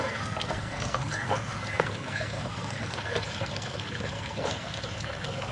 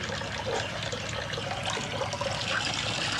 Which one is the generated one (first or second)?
first